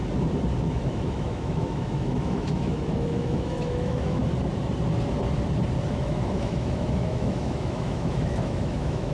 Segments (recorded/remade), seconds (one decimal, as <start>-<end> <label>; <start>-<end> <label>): 0.0-0.6 recorded; 0.6-4.2 remade; 4.2-5.9 recorded; 5.9-9.1 remade